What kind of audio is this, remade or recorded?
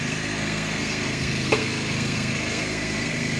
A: remade